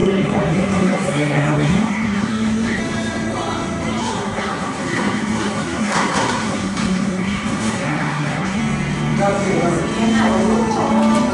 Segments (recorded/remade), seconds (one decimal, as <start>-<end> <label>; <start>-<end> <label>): 0.0-2.8 remade; 2.8-4.0 recorded; 4.0-8.6 remade; 8.6-11.3 recorded